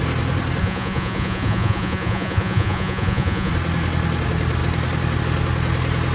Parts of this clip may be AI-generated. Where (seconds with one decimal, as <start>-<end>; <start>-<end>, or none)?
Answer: 0.6-3.5